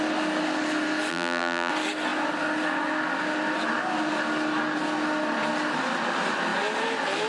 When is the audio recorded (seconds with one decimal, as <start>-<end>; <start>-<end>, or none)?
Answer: 0.0-1.1; 1.7-7.3